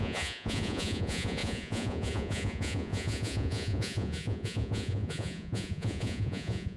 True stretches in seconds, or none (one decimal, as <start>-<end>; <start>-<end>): none